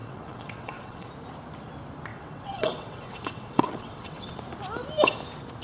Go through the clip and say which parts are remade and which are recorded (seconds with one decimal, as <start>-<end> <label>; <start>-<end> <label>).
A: 0.0-1.1 remade; 1.1-2.1 recorded; 2.1-4.3 remade; 4.3-5.6 recorded